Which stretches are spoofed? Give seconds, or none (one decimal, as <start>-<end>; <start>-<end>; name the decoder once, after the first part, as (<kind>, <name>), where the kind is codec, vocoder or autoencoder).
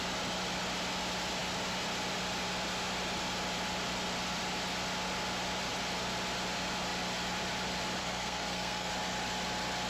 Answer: 8.0-8.9 (codec, SNAC)